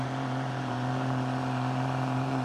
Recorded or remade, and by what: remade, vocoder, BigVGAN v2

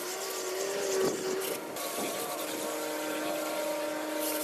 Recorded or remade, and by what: recorded